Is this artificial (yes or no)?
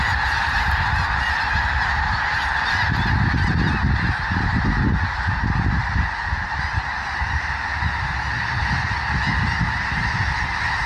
no